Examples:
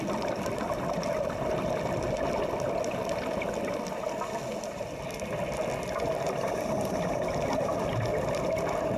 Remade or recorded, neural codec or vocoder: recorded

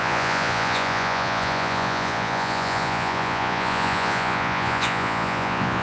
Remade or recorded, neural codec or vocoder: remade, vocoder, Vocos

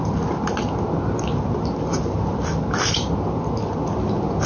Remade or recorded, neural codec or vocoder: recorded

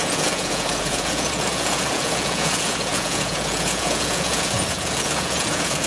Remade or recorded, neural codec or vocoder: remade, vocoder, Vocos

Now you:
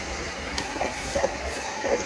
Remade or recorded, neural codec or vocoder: remade, codec, SNAC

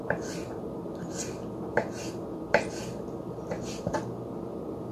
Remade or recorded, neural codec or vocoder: recorded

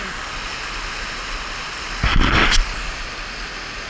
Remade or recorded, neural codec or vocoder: recorded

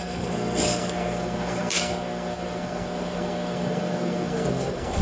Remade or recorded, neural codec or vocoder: remade, codec, SNAC